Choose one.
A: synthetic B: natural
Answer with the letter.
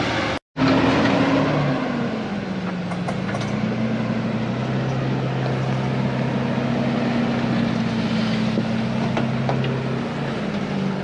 B